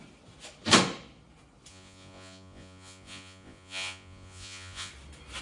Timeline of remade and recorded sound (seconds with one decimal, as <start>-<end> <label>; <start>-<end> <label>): 0.0-1.7 recorded; 1.7-4.9 remade; 4.9-5.4 recorded